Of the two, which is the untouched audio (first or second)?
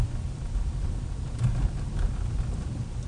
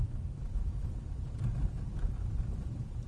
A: first